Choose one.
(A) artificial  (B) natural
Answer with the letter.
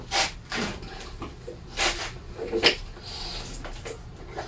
B